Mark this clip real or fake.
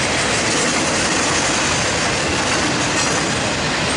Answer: real